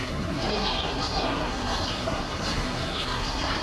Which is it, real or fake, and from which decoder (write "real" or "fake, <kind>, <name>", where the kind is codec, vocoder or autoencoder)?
fake, codec, SNAC